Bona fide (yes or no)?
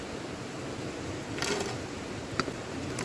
yes